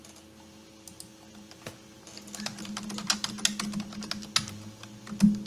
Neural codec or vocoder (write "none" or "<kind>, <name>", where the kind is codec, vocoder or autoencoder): none